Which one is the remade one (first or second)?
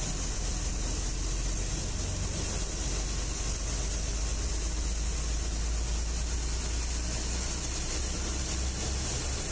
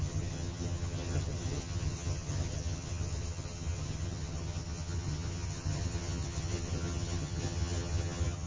second